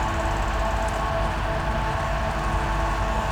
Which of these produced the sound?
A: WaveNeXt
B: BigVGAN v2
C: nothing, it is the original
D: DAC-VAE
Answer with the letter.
C